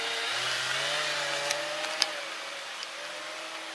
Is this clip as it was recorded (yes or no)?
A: yes